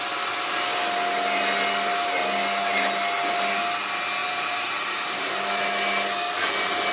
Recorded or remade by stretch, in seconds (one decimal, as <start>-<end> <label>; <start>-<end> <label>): 0.0-4.2 recorded; 4.2-5.3 remade; 5.3-6.9 recorded